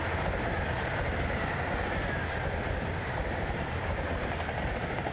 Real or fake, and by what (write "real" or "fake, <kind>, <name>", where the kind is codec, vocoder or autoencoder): real